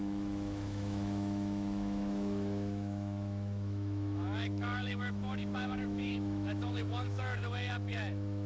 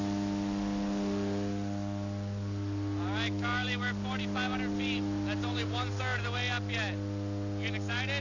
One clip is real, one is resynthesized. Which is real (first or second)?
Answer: second